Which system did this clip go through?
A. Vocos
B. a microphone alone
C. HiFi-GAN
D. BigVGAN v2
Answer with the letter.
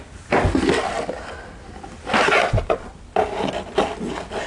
B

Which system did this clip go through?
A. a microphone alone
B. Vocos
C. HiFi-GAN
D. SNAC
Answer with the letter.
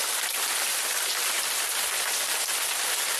A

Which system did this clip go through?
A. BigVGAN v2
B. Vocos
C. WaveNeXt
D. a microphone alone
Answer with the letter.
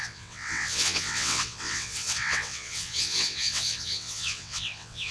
C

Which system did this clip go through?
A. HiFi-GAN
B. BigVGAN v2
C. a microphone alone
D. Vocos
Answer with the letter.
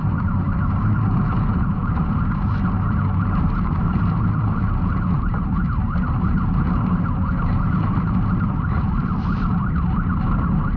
B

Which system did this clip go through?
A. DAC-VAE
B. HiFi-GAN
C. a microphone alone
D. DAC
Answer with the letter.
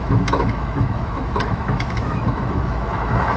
A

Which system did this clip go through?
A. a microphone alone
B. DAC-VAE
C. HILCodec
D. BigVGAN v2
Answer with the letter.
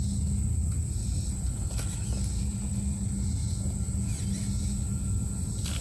A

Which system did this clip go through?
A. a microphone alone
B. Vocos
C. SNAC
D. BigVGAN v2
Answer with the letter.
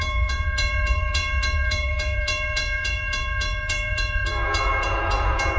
B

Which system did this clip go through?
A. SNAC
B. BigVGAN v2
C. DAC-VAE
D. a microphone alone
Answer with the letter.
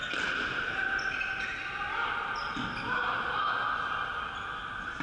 D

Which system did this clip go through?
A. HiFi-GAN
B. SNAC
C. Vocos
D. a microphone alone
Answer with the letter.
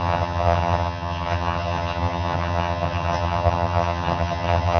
A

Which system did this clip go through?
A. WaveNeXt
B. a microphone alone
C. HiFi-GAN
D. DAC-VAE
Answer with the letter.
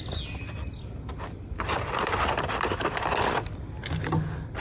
B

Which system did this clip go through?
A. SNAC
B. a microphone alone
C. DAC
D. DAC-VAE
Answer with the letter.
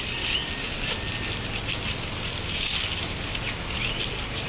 B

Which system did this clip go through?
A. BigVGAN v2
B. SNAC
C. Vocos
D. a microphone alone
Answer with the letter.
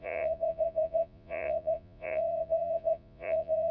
C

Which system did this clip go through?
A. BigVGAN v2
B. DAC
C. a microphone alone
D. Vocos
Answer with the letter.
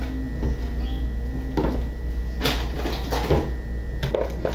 C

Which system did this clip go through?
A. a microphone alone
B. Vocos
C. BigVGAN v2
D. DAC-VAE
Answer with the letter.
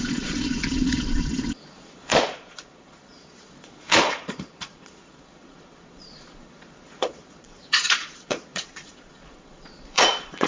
B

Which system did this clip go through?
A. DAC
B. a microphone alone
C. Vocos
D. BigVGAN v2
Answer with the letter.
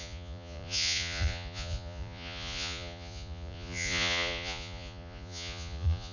C